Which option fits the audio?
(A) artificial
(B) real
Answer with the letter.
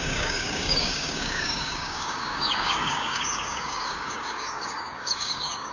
A